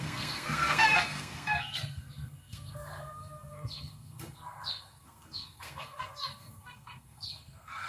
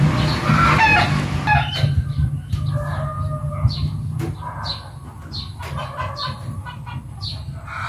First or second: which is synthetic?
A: first